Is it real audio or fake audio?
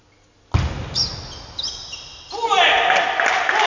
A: real